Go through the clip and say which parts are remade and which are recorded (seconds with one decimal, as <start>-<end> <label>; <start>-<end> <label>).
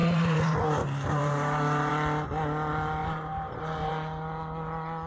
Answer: 0.0-1.9 remade; 1.9-3.0 recorded; 3.0-3.9 remade; 3.9-5.1 recorded